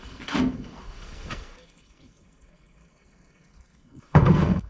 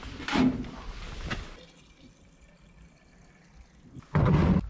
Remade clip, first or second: first